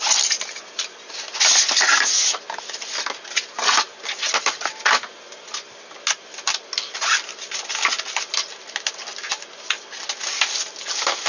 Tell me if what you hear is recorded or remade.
recorded